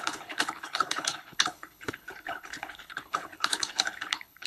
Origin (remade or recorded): remade